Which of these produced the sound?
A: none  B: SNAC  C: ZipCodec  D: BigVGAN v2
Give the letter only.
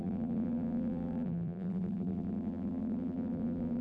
D